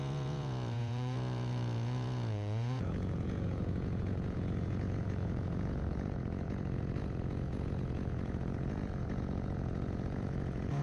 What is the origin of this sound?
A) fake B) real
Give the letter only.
A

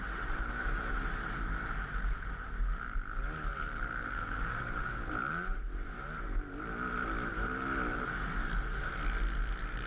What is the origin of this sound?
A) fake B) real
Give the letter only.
B